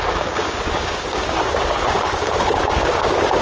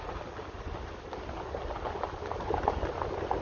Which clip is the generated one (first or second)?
first